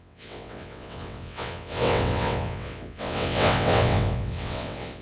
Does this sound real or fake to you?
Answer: fake